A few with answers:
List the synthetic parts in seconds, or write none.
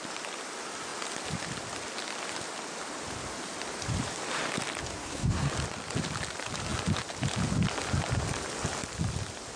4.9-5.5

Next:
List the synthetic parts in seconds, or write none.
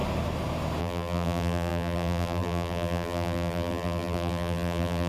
0.8-5.1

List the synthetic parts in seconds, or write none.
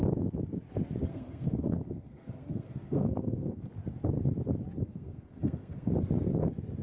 1.1-3.7; 4.8-5.9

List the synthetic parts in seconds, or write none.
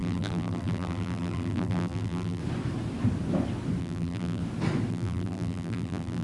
0.0-2.4; 3.8-4.4; 4.9-6.2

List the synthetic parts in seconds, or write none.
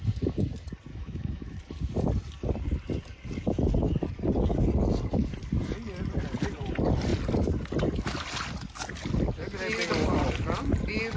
0.9-1.6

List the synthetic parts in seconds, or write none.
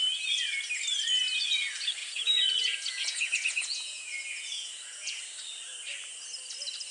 2.0-5.2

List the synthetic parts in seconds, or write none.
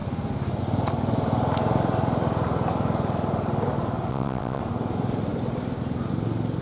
4.1-4.6